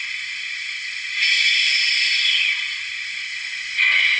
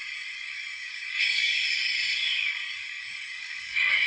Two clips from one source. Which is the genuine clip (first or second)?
first